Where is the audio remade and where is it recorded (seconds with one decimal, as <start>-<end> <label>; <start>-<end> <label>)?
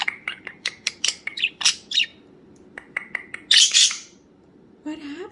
0.0-2.1 remade; 2.1-3.6 recorded; 3.6-5.3 remade